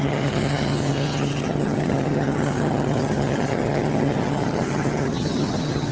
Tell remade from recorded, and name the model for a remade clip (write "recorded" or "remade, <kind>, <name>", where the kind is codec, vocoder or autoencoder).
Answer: remade, vocoder, HiFi-GAN